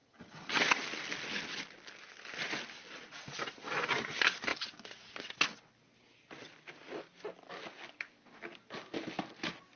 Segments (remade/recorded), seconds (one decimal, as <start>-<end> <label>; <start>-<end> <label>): 0.0-0.8 remade; 0.8-9.8 recorded